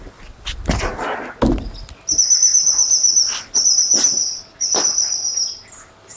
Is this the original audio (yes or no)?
yes